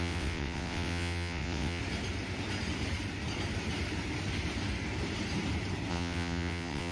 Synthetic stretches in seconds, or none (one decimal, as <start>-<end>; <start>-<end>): 0.0-1.8; 5.9-6.9